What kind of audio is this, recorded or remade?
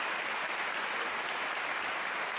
recorded